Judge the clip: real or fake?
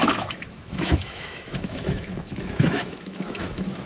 fake